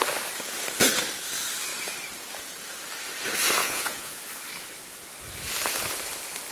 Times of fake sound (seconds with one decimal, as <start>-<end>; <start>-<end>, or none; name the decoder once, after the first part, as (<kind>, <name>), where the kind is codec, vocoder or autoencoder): 3.6-4.2 (vocoder, Vocos)